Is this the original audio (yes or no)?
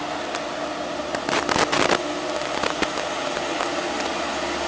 yes